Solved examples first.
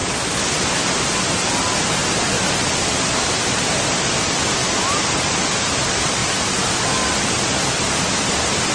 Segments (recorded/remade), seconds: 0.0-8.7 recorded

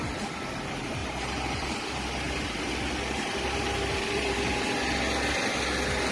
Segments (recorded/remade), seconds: 0.0-1.0 recorded; 1.0-4.7 remade; 4.7-6.1 recorded

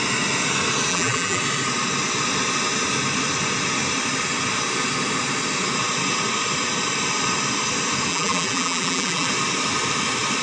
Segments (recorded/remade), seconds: 0.0-0.9 recorded; 0.9-1.4 remade; 1.4-8.1 recorded; 8.1-9.3 remade; 9.3-10.4 recorded

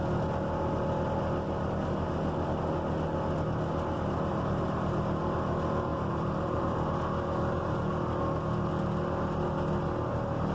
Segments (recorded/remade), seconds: 0.0-4.3 recorded; 4.3-5.0 remade; 5.0-5.9 recorded; 5.9-6.9 remade; 6.9-10.5 recorded

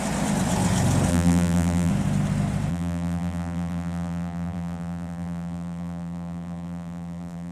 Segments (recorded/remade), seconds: 0.0-1.1 recorded; 1.1-1.9 remade; 1.9-2.7 recorded; 2.7-7.5 remade